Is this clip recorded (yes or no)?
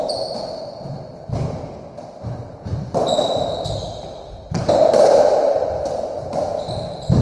yes